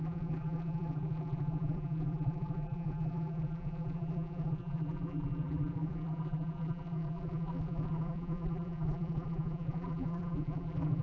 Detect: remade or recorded remade